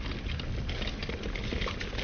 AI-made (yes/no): no